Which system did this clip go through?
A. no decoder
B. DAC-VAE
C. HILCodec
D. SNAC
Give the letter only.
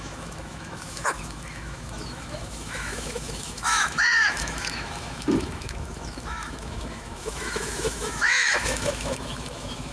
B